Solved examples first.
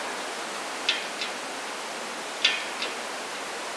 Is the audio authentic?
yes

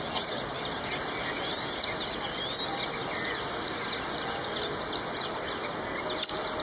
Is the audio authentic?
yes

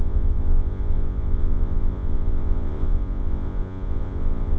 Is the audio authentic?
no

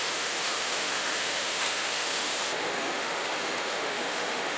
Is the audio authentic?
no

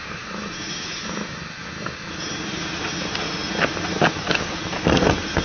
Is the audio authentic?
yes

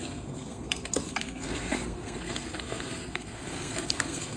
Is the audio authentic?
no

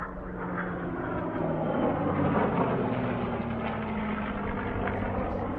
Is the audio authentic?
yes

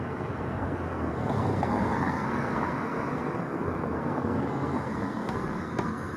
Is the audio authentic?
no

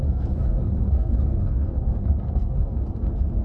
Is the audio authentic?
no